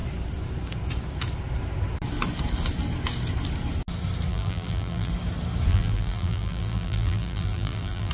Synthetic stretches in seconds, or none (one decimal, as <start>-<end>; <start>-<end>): 4.3-5.1; 5.7-8.1